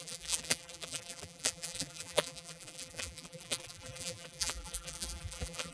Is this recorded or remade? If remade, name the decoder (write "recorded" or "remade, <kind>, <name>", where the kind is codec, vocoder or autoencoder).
remade, vocoder, BigVGAN v2